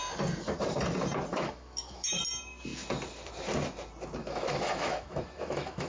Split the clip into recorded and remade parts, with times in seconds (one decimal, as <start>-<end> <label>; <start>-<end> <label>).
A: 0.0-1.3 recorded; 1.3-2.2 remade; 2.2-4.2 recorded; 4.2-5.9 remade